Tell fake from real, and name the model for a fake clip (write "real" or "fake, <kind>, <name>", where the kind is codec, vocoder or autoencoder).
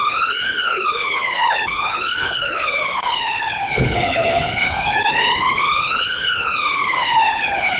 fake, codec, HILCodec